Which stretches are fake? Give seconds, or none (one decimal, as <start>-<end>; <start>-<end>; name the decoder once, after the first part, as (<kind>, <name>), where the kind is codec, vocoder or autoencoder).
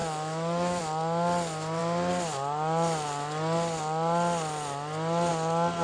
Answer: 0.0-0.8 (autoencoder, DAC-VAE)